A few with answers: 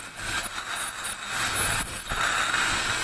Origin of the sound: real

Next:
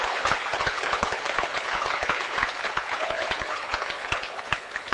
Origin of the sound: fake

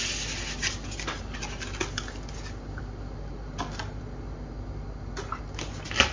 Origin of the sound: real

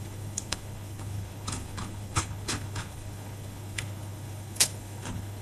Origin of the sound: fake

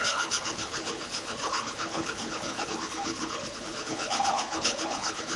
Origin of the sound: fake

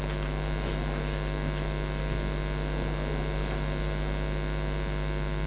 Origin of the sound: real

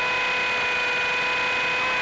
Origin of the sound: real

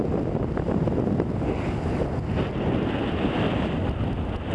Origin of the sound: real